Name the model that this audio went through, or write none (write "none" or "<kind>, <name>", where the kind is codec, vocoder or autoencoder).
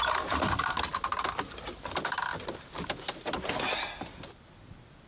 none